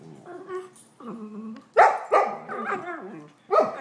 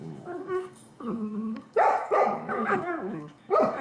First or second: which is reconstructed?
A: second